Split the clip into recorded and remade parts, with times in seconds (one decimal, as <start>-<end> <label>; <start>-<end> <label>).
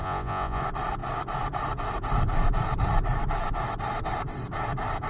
0.0-0.6 remade; 0.6-5.1 recorded